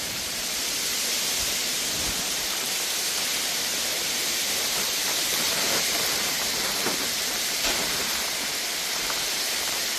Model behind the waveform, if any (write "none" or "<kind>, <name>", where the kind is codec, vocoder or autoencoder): vocoder, BigVGAN v2